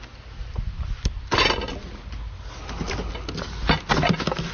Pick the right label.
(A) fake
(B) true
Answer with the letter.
B